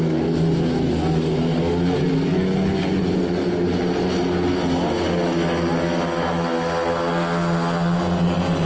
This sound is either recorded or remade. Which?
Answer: recorded